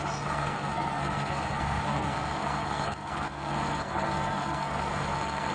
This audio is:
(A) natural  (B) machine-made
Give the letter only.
B